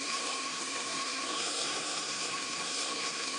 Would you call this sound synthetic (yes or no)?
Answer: yes